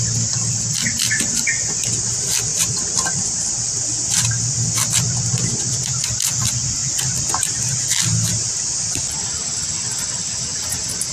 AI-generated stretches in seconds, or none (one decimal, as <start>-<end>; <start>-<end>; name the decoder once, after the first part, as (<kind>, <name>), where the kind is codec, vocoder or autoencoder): 2.5-4.3 (vocoder, BigVGAN v2); 6.8-7.8; 8.3-9.9